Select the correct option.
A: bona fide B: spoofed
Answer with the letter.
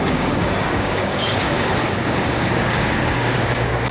B